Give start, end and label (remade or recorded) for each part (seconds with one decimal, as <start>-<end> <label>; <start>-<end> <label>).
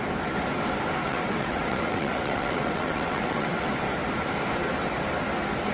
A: 0.0-1.0 recorded; 1.0-3.7 remade; 3.7-5.7 recorded